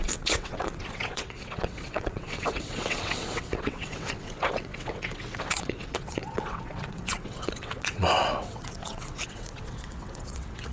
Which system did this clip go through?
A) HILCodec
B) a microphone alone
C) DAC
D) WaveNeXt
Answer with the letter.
D